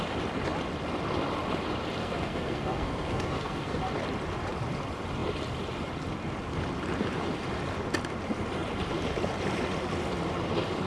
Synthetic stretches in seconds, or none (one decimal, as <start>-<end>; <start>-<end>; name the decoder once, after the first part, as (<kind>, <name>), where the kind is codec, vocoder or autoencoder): 2.0-3.8 (codec, SNAC)